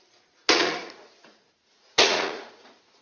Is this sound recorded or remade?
remade